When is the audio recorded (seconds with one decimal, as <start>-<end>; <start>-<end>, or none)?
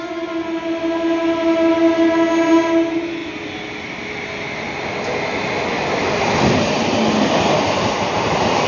0.0-8.7